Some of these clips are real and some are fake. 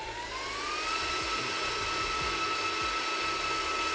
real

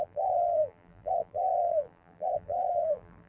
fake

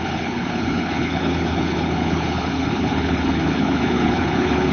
fake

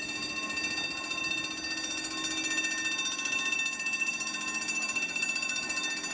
real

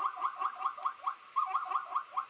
real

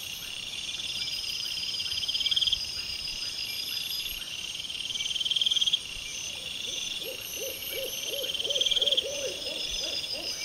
fake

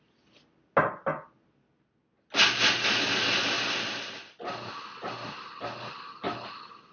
real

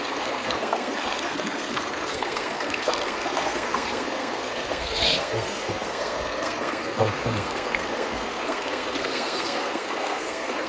fake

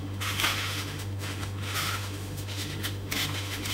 fake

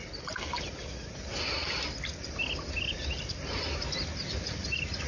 real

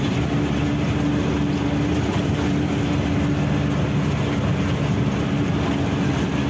real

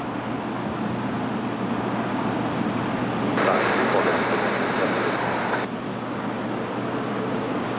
real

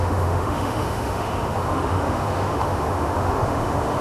fake